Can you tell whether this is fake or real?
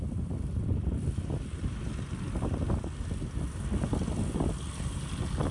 real